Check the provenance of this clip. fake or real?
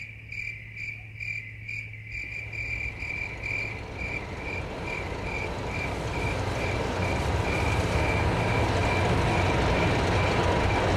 real